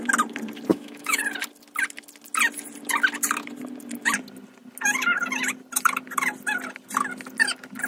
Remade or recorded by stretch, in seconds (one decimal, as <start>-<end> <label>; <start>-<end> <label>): 0.0-0.7 recorded; 0.7-1.2 remade; 1.2-7.9 recorded